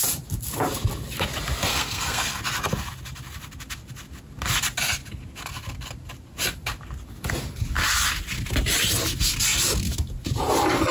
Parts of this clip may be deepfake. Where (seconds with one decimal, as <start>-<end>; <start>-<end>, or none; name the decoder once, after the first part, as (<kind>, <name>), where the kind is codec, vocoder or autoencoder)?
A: 1.7-2.4 (codec, SNAC)